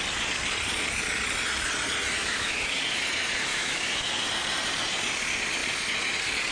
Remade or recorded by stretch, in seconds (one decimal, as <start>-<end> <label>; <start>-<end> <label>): 0.0-2.2 recorded; 2.2-2.8 remade; 2.8-3.5 recorded; 3.5-4.1 remade; 4.1-6.5 recorded